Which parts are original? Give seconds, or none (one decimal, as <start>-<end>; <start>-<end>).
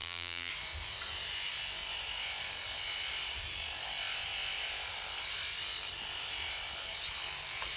0.5-7.8